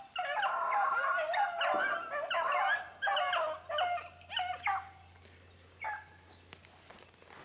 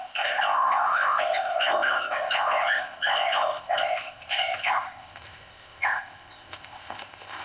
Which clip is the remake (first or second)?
second